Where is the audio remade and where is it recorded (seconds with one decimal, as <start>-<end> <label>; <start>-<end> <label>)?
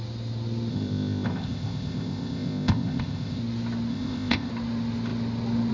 0.0-0.7 recorded; 0.7-3.4 remade; 3.4-3.9 recorded; 3.9-4.5 remade; 4.5-5.7 recorded